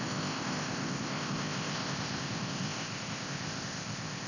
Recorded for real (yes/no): no